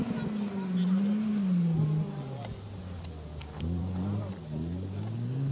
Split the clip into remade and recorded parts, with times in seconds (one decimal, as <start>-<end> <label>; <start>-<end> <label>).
0.0-5.5 recorded